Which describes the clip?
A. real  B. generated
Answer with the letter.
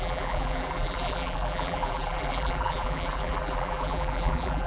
B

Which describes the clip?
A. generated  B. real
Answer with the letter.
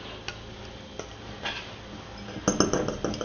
B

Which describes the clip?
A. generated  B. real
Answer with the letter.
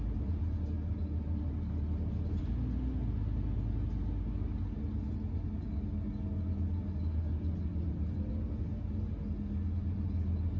B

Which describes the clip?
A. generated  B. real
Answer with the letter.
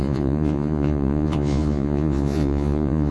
A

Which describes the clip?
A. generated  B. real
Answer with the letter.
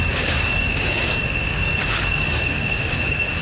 A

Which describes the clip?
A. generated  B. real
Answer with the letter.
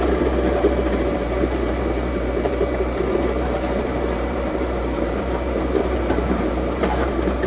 A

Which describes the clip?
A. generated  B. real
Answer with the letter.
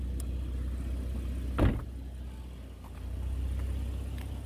B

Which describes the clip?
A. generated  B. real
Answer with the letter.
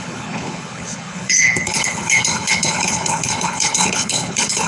A